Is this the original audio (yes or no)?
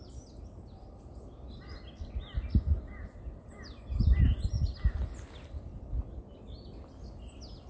yes